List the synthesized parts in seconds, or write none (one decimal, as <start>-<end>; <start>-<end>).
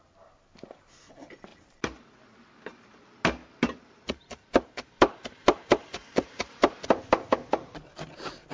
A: 1.5-3.0; 3.4-6.8